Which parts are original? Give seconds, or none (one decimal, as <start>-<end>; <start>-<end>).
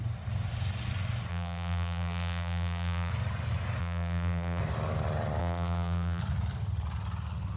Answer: 0.0-1.3; 3.1-3.8; 4.6-5.4; 6.2-7.6